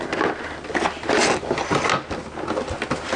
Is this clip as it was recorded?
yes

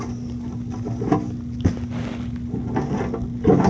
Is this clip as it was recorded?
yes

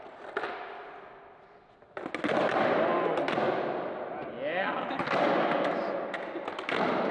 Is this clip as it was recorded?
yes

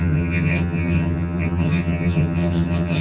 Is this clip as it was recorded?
no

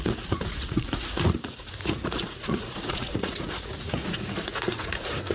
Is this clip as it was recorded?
no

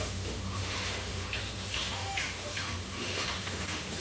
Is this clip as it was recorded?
no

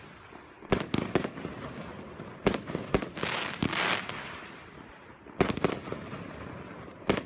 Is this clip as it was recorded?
yes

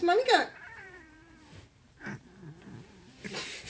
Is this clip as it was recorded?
no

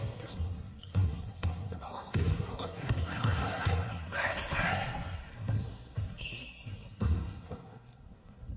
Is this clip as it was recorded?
no